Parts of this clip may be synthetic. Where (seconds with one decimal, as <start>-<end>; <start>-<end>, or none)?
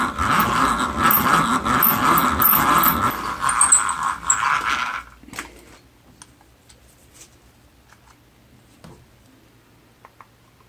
none